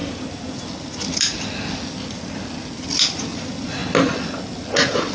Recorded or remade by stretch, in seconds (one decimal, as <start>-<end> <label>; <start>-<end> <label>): 0.0-5.1 recorded